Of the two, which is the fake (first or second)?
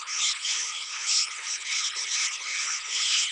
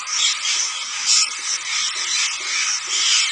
first